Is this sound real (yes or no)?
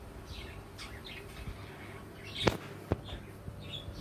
yes